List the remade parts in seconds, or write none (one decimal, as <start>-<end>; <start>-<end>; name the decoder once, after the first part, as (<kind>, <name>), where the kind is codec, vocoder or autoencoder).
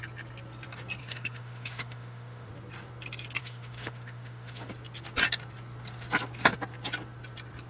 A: 1.0-2.5 (autoencoder, DAC-VAE); 3.4-4.7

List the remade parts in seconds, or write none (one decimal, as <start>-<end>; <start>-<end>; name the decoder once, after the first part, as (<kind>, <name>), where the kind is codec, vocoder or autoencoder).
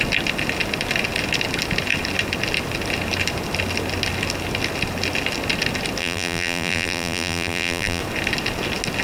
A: 6.0-8.0 (vocoder, BigVGAN v2)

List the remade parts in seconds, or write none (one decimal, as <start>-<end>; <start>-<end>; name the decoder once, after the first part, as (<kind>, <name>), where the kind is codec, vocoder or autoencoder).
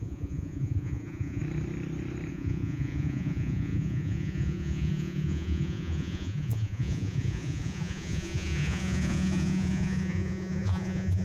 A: 0.0-1.4 (vocoder, Vocos); 2.3-11.2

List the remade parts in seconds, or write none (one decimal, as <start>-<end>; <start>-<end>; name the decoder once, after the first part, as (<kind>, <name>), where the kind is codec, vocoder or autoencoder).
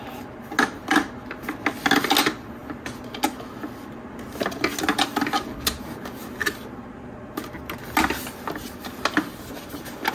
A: none